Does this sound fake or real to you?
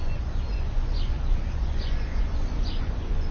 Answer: fake